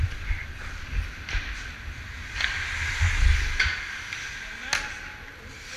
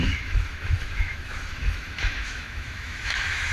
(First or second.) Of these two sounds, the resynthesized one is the second